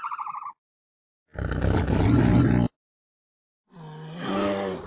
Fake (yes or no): no